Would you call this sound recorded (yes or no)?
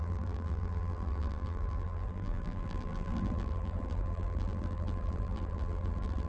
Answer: no